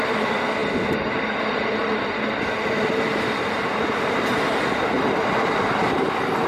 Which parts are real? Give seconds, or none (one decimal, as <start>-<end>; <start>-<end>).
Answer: 0.0-6.5